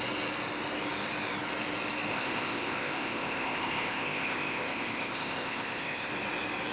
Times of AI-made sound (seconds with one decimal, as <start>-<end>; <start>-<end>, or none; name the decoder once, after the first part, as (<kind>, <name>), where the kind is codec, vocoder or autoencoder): 2.1-6.1 (codec, ZipCodec)